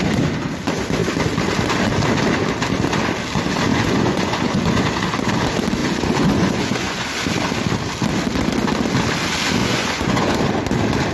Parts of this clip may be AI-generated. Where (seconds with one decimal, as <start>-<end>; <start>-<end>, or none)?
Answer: 3.7-4.8; 5.8-7.1; 9.6-10.4